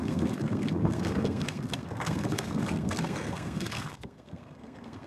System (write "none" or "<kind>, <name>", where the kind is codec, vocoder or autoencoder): codec, SNAC